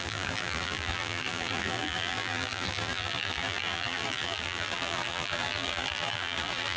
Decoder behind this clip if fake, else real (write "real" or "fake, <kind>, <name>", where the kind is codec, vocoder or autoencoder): fake, vocoder, BigVGAN v2